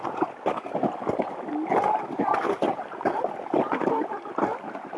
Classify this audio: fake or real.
real